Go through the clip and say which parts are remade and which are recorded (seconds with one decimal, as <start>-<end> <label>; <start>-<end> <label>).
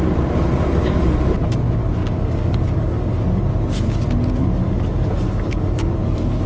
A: 0.0-2.0 recorded; 2.0-3.4 remade; 3.4-4.4 recorded; 4.4-6.0 remade; 6.0-6.5 recorded